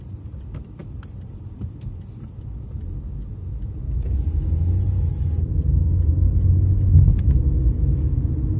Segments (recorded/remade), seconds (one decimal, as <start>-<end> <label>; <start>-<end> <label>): 0.0-3.2 recorded; 3.2-6.1 remade; 6.1-7.1 recorded; 7.1-8.6 remade